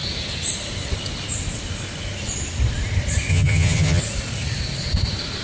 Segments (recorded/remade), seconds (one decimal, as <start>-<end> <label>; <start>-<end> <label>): 0.0-3.3 recorded; 3.3-4.0 remade; 4.0-5.4 recorded